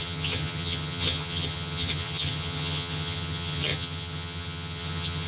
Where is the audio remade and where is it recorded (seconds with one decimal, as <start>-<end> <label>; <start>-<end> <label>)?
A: 0.0-5.3 remade